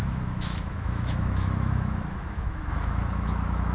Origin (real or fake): fake